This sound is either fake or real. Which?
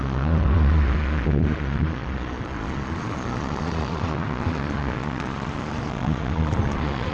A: fake